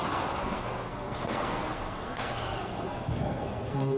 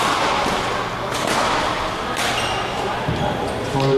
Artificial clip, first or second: first